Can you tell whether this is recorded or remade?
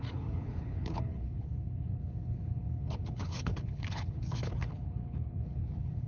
remade